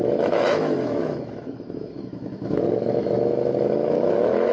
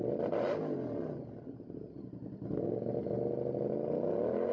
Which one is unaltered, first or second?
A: second